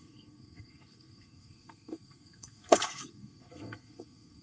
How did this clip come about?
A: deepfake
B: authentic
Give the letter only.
A